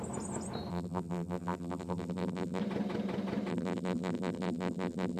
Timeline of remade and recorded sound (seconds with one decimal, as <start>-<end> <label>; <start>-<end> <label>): 0.0-0.7 recorded; 0.7-2.6 remade; 2.6-3.5 recorded; 3.5-5.2 remade